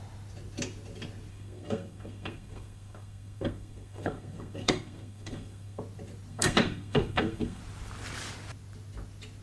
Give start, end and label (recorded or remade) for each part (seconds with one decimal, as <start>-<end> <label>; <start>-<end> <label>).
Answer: 0.0-1.3 recorded; 1.3-5.8 remade; 5.8-6.3 recorded; 6.3-7.6 remade; 7.6-9.4 recorded